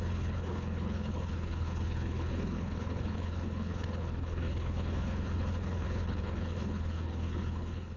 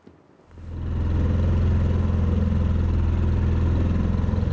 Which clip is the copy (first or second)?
first